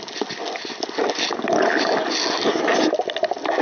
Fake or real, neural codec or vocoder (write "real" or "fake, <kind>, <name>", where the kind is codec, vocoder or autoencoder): real